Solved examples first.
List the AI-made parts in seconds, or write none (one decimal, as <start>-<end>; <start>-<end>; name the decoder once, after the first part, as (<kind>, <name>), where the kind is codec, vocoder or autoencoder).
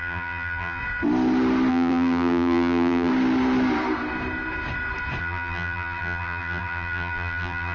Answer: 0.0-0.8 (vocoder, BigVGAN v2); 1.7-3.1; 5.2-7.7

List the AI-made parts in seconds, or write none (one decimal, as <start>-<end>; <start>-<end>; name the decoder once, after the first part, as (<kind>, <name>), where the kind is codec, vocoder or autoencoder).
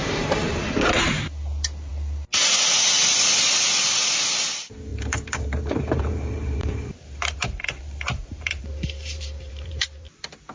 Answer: 0.0-1.2 (vocoder, BigVGAN v2); 4.9-10.1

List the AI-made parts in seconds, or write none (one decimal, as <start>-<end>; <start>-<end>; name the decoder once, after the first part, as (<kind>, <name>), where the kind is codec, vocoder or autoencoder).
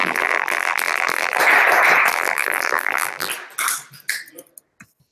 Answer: 0.0-1.4 (vocoder, BigVGAN v2); 2.1-3.3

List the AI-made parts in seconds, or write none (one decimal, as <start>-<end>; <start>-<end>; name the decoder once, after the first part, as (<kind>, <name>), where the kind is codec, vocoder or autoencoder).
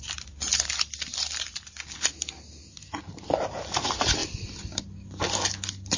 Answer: 4.2-4.8 (vocoder, BigVGAN v2)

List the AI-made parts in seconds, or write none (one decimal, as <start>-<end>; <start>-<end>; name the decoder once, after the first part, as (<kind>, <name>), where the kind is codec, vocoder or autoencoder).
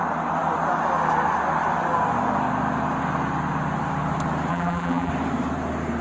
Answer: 4.5-5.1 (vocoder, BigVGAN v2)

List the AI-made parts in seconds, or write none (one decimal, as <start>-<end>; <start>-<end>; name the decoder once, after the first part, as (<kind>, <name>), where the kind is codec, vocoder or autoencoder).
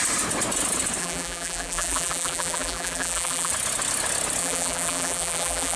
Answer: 1.0-3.5 (vocoder, BigVGAN v2); 4.4-5.8